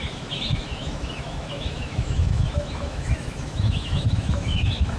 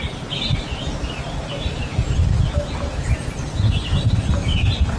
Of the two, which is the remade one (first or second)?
first